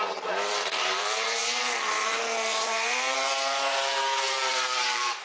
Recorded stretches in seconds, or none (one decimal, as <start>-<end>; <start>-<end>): none